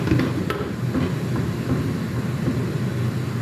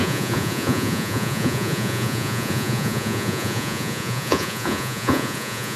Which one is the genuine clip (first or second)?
first